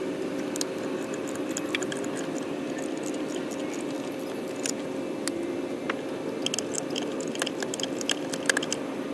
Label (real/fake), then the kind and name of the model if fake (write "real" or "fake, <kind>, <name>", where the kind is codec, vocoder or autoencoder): real